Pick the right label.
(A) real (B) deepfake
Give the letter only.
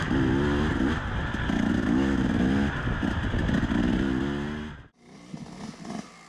A